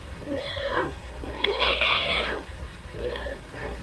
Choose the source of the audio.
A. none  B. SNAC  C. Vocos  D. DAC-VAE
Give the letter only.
B